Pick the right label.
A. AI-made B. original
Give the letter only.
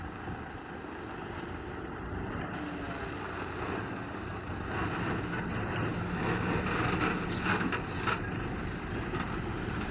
B